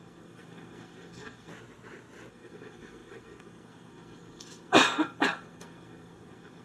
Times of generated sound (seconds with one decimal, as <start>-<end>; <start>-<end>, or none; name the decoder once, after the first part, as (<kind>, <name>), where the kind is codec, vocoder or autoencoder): 0.0-1.5 (codec, SNAC); 2.3-6.6